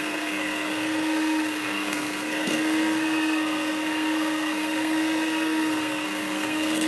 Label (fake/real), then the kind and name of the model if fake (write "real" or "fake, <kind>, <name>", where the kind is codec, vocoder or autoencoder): fake, codec, SNAC